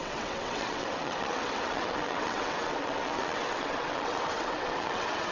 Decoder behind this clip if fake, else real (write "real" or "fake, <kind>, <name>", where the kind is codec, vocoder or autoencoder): fake, vocoder, WaveNeXt